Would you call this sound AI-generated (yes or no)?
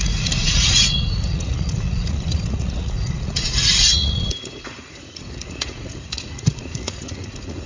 yes